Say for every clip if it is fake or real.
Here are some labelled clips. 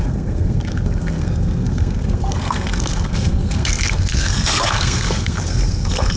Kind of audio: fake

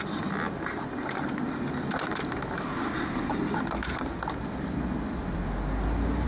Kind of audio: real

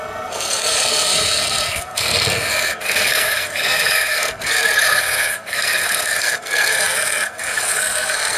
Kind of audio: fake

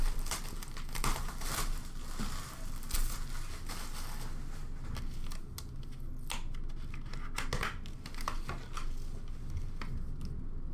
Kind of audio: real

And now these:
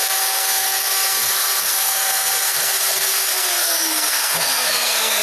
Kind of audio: fake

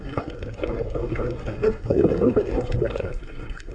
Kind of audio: fake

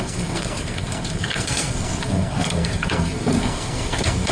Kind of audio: fake